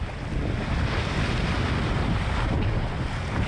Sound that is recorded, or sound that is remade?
recorded